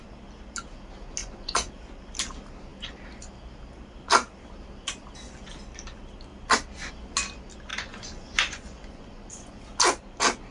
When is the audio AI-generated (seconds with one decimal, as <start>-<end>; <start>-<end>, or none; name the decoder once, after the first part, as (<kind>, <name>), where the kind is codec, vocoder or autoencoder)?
1.2-1.7 (vocoder, Vocos); 7.7-9.6